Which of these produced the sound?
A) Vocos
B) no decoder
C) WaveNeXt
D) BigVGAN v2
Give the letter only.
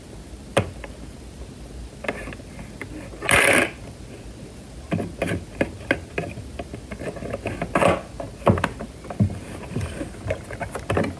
B